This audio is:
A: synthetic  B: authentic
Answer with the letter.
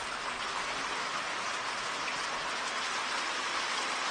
B